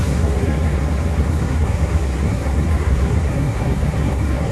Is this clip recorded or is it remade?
remade